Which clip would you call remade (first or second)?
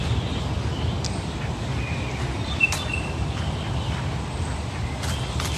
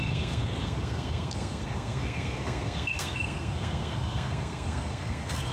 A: second